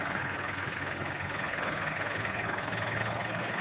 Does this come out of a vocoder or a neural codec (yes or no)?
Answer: yes